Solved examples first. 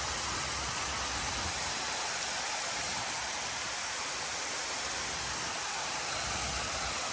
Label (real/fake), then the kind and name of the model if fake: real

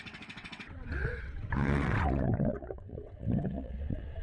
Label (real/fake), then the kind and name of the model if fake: fake, vocoder, WaveNeXt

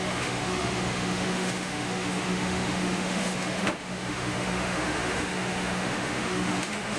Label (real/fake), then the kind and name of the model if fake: fake, autoencoder, DAC-VAE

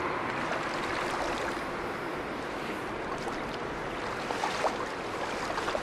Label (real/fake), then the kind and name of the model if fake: fake, vocoder, BigVGAN v2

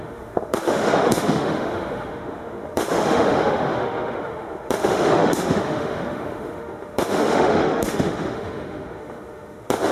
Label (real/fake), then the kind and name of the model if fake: fake, autoencoder, DAC-VAE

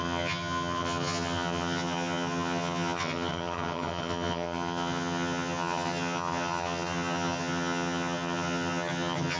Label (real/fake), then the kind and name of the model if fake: fake, vocoder, HiFi-GAN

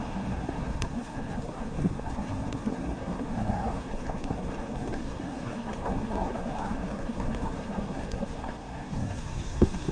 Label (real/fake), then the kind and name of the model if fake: fake, codec, SNAC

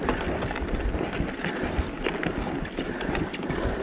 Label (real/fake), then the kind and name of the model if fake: real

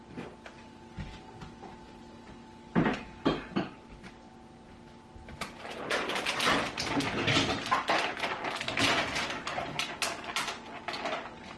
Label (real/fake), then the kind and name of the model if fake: real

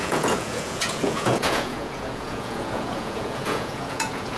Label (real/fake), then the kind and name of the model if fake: fake, vocoder, Vocos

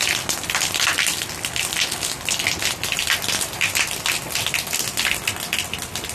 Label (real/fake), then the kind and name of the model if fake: real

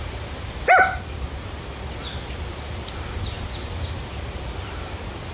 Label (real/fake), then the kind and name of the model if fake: real